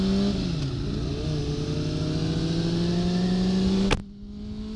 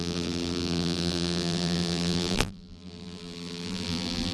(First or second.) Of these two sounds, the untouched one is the first